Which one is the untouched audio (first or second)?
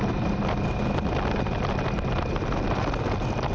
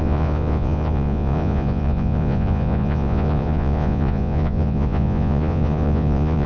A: first